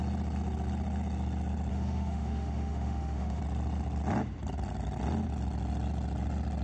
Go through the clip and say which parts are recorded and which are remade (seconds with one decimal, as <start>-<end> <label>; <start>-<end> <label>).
0.0-1.7 recorded; 1.7-3.4 remade; 3.4-6.6 recorded